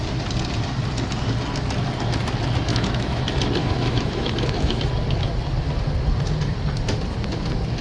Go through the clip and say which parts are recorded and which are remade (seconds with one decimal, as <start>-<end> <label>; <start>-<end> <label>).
0.0-2.7 recorded; 2.7-3.2 remade; 3.2-3.6 recorded; 3.6-4.8 remade; 4.8-7.8 recorded